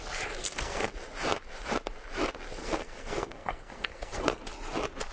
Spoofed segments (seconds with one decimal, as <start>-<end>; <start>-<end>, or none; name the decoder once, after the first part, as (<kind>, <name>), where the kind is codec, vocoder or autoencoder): 0.4-0.9 (codec, SNAC); 2.6-4.4